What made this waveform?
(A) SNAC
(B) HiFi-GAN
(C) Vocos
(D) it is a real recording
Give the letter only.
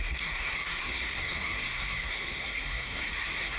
A